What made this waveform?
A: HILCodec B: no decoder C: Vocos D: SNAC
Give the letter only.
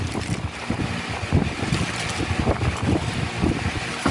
B